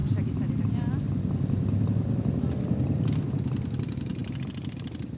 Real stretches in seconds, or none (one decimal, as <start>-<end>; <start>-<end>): 0.0-5.2